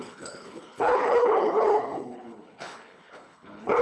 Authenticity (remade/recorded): remade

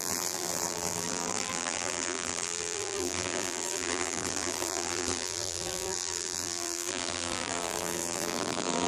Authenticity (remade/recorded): remade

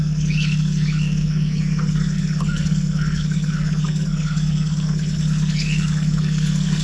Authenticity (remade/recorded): remade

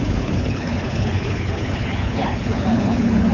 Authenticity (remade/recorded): remade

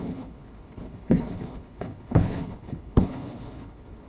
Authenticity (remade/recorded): remade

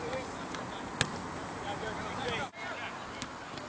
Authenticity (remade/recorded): recorded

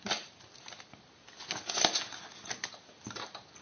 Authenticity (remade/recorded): recorded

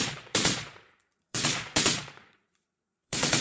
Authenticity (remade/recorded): remade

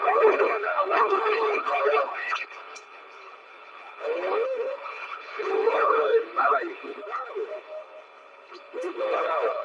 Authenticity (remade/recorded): remade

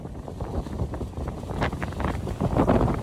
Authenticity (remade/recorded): recorded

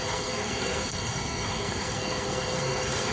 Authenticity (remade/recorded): remade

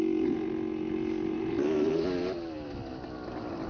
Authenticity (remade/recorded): recorded